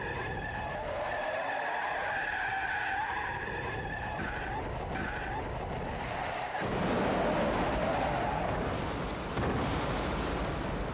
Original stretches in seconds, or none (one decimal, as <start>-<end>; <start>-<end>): 0.0-10.9